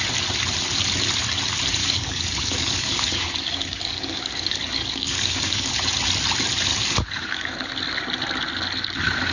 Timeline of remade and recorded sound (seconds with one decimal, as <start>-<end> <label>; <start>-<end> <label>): 0.0-1.8 recorded; 1.8-5.7 remade; 5.7-6.7 recorded; 6.7-7.7 remade; 7.7-9.3 recorded